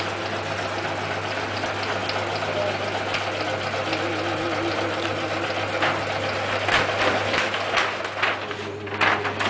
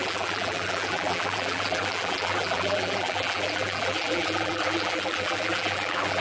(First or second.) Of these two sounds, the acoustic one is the first